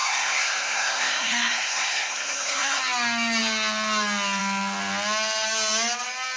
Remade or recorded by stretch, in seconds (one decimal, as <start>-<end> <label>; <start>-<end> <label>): 0.0-2.8 remade; 2.8-6.4 recorded